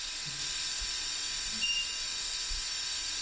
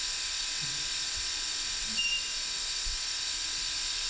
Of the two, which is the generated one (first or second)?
second